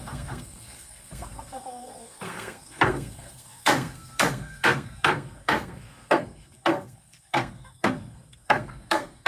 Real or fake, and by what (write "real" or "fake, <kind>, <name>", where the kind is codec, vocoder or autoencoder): fake, codec, SNAC